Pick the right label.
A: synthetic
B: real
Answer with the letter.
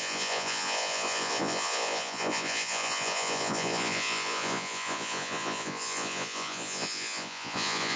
A